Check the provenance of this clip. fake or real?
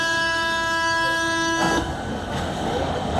fake